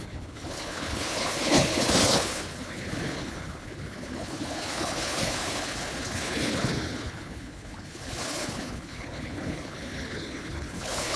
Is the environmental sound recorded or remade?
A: remade